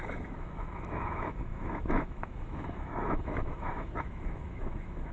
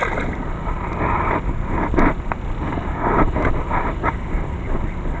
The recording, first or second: second